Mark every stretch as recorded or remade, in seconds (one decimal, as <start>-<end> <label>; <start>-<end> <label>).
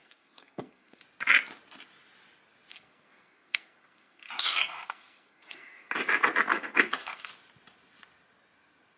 0.0-1.0 remade; 1.0-2.7 recorded; 2.7-5.9 remade; 5.9-6.5 recorded; 6.5-7.3 remade; 7.3-9.0 recorded